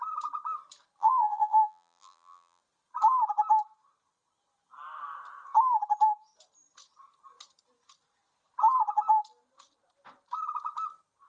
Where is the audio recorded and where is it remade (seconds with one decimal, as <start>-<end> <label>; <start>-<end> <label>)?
0.0-1.0 recorded; 1.0-2.6 remade; 2.6-11.3 recorded